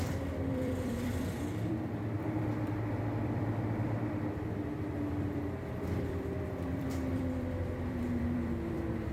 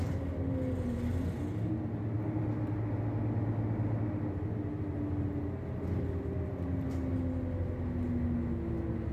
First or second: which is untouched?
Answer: second